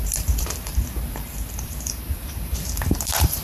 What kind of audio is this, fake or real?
fake